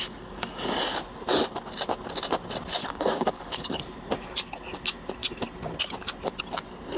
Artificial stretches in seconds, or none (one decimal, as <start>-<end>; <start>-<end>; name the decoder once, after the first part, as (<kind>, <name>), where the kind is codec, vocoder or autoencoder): 0.0-0.6 (codec, DAC); 2.8-3.8